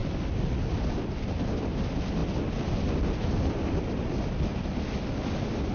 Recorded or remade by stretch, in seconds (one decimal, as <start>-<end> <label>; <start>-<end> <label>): 0.0-5.7 recorded